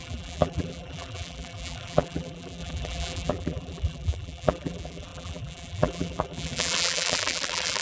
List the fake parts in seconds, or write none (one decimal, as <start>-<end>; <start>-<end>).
0.0-7.8